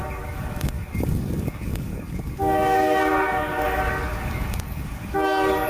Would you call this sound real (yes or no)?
no